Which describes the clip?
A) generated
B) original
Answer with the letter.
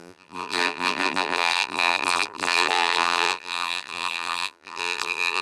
A